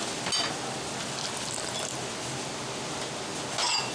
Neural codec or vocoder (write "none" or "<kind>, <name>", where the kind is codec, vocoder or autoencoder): none